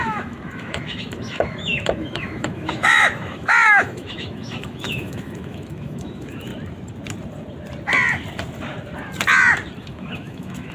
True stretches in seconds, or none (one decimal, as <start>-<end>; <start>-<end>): 6.5-9.8